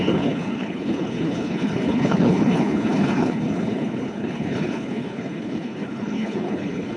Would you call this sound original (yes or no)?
no